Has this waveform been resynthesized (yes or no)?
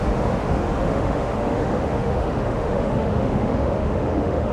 yes